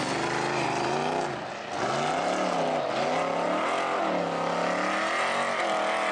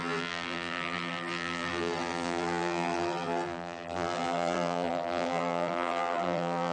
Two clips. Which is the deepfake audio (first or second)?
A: second